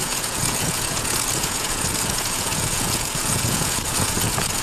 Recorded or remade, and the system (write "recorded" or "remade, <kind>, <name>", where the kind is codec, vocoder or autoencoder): remade, vocoder, Vocos